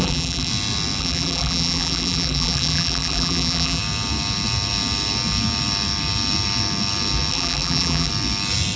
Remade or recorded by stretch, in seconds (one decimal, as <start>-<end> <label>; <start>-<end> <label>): 0.0-0.5 remade; 0.5-1.0 recorded; 1.0-3.8 remade; 3.8-7.3 recorded; 7.3-8.1 remade; 8.1-8.8 recorded